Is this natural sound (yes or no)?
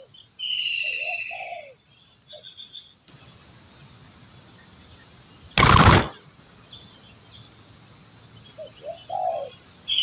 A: yes